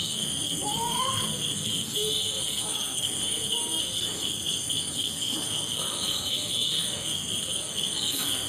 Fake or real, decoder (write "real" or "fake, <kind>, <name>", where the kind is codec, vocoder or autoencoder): fake, codec, SNAC